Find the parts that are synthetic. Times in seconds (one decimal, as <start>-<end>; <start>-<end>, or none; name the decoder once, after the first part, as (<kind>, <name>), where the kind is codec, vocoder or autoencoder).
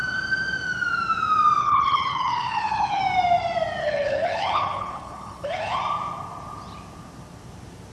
1.6-3.0 (codec, HILCodec); 3.8-5.8